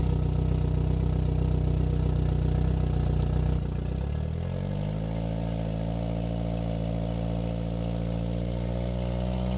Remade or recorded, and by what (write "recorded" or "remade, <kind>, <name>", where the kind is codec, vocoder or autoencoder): recorded